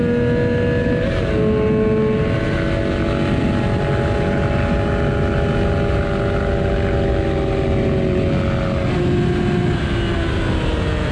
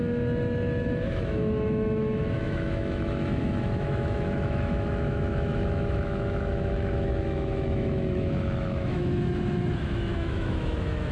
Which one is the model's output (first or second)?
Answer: second